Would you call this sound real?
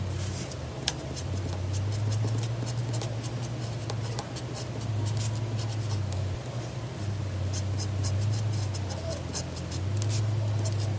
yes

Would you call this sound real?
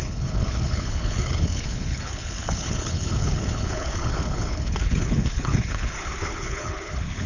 no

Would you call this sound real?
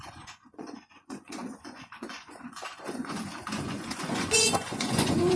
no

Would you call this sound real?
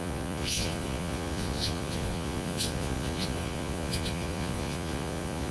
no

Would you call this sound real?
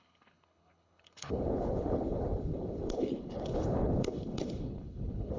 no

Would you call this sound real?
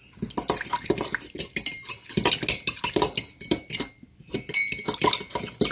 yes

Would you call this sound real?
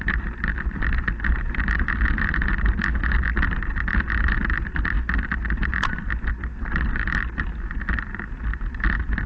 yes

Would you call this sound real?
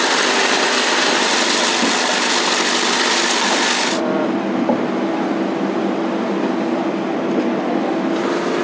yes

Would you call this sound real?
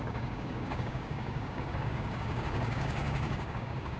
no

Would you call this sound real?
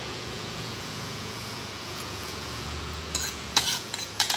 no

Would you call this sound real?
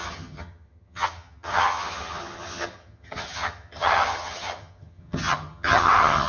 no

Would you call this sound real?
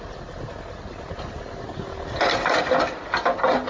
yes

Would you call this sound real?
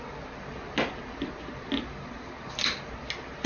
yes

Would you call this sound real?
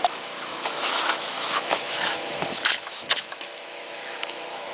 no